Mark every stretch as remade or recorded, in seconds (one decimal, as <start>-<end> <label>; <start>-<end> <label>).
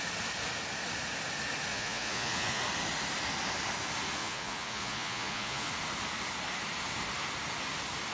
0.0-1.7 recorded; 1.7-2.6 remade; 2.6-4.2 recorded; 4.2-5.7 remade; 5.7-8.1 recorded